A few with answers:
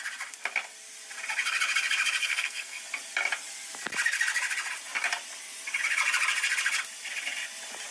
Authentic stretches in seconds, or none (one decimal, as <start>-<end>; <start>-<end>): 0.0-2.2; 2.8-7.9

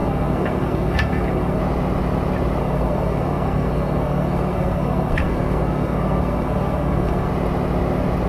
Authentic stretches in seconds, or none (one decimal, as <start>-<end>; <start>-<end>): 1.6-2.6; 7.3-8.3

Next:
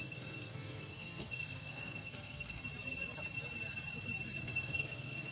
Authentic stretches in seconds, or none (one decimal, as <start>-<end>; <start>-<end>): 2.6-4.4

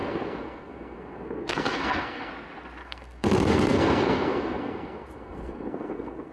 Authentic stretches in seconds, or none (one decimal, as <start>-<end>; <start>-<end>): 2.3-2.8